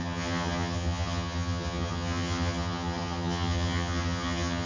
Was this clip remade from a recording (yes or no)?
yes